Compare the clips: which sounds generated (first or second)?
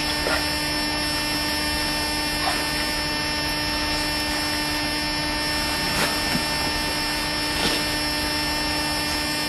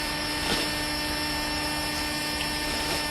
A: second